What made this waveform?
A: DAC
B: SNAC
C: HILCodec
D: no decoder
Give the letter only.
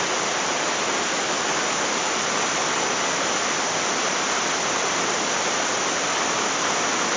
D